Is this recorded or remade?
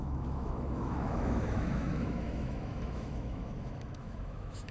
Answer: remade